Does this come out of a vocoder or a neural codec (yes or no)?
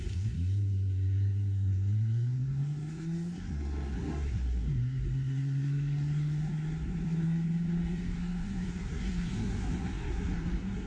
yes